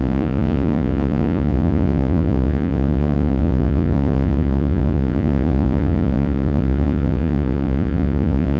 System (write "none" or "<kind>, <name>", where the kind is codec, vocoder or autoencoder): vocoder, Vocos